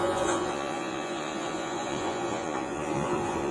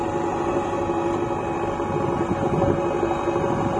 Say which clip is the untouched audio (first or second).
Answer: second